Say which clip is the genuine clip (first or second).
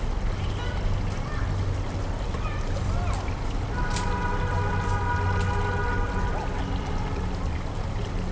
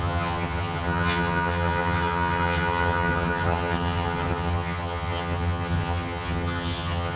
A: first